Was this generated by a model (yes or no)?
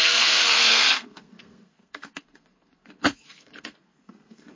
yes